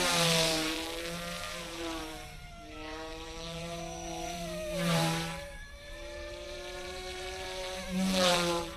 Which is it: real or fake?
fake